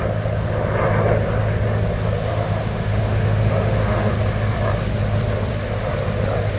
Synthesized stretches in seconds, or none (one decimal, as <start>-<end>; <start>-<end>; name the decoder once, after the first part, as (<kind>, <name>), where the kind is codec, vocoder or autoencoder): 2.3-4.1 (autoencoder, DAC-VAE)